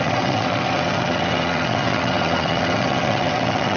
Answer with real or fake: fake